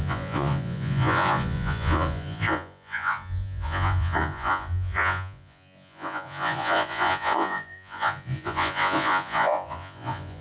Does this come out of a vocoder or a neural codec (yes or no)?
yes